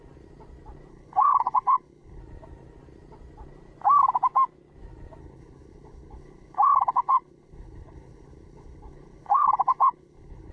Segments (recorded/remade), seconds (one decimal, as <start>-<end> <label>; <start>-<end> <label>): 0.0-0.9 recorded; 0.9-2.2 remade; 2.2-5.2 recorded; 5.2-10.5 remade